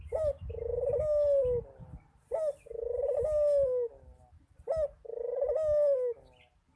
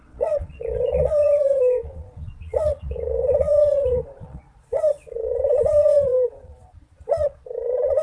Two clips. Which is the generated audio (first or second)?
second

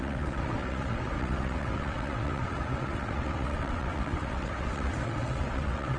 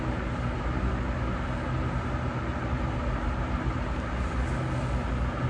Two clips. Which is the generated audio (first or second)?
first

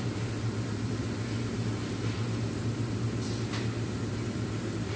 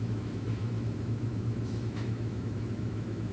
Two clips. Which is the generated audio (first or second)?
second